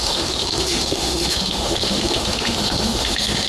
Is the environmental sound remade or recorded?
remade